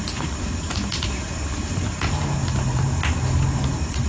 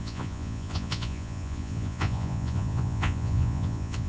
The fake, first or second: second